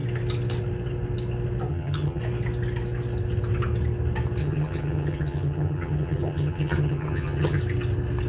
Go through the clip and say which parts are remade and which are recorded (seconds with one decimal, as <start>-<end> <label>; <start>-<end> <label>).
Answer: 0.0-1.7 recorded; 1.7-2.2 remade; 2.2-4.4 recorded; 4.4-7.6 remade; 7.6-8.3 recorded

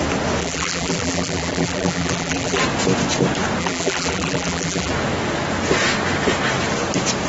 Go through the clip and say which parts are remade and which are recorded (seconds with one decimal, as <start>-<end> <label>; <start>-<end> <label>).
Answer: 0.0-0.4 recorded; 0.4-2.6 remade; 2.6-3.6 recorded; 3.6-4.9 remade; 4.9-7.3 recorded